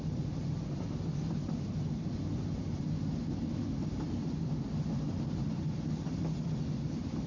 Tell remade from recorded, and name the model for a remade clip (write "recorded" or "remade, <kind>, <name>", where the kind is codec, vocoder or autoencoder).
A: recorded